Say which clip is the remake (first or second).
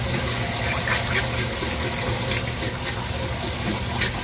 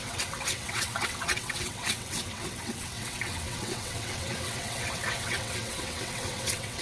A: second